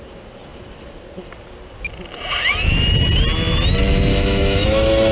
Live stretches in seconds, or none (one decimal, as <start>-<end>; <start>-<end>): 0.0-4.1